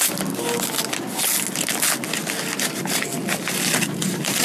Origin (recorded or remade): recorded